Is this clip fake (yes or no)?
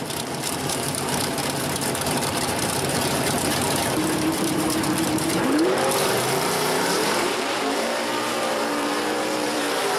yes